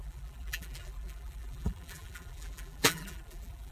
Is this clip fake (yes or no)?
yes